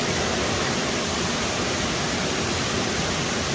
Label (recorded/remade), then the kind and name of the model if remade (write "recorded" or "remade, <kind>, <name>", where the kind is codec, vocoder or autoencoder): recorded